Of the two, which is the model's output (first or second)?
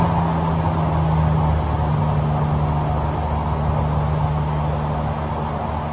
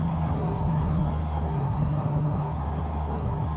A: second